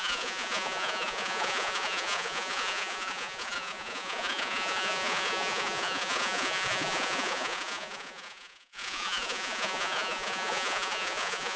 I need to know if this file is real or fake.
fake